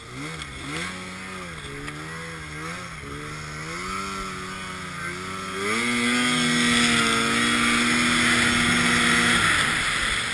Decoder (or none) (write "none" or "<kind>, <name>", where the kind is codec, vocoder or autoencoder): none